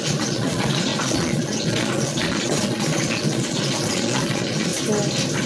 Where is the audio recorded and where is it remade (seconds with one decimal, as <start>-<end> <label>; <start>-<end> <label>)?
0.0-4.7 remade; 4.7-5.5 recorded